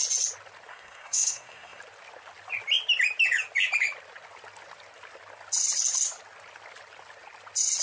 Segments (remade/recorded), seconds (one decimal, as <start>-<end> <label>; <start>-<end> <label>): 0.0-0.7 recorded; 0.7-1.8 remade; 1.8-7.8 recorded